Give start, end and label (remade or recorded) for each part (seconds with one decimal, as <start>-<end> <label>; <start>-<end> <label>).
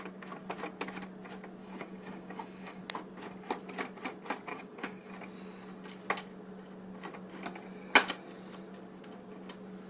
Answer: 0.0-1.6 recorded; 1.6-2.8 remade; 2.8-4.5 recorded; 4.5-5.1 remade; 5.1-9.9 recorded